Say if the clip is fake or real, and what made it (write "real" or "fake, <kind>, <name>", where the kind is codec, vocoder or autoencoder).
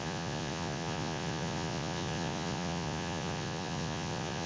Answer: fake, vocoder, Vocos